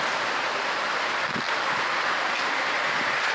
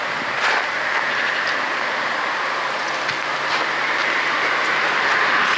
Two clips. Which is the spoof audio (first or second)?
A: first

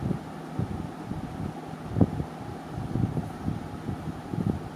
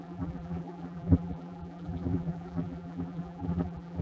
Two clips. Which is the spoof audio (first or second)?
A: second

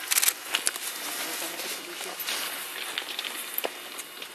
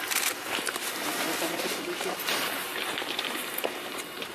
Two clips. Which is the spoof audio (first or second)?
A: second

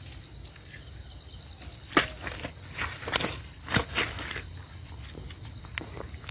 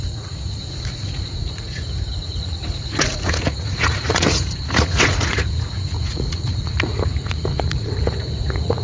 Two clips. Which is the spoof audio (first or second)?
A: second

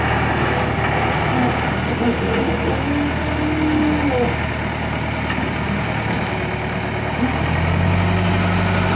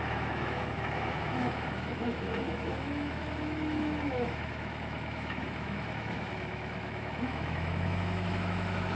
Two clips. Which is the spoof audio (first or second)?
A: second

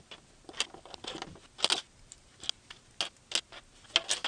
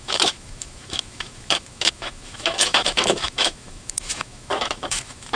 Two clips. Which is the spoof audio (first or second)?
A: second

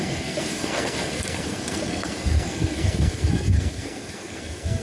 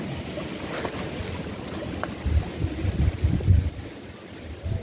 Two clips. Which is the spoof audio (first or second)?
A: first